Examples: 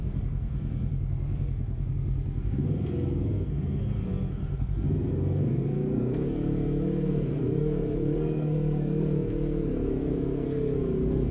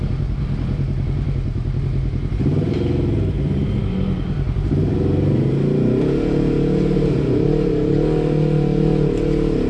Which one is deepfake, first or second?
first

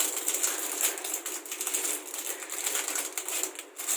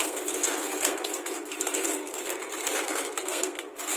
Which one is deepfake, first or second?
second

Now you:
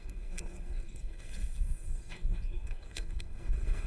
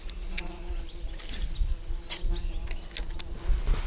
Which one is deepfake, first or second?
first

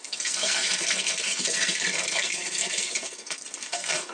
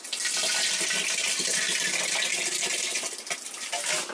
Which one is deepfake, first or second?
first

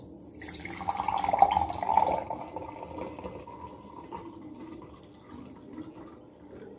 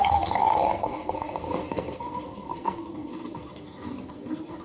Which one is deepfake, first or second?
second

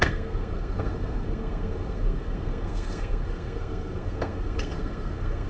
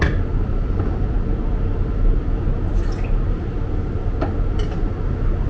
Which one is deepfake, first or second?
first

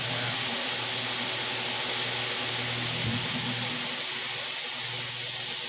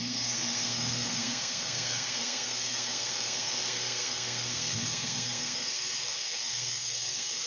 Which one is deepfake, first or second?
second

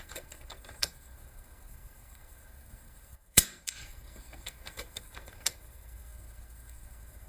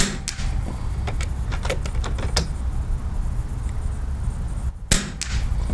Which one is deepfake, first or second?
first